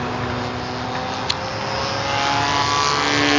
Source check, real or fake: real